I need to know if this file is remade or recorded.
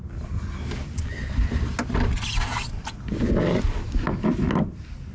recorded